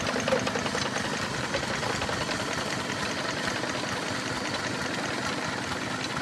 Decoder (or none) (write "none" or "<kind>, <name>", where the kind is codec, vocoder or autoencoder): none